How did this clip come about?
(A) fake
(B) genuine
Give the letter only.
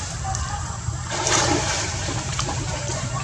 A